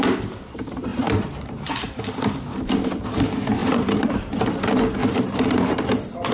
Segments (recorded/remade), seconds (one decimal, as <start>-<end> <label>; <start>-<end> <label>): 0.0-0.9 recorded; 0.9-2.3 remade; 2.3-3.6 recorded; 3.6-4.4 remade; 4.4-5.0 recorded; 5.0-5.7 remade; 5.7-6.3 recorded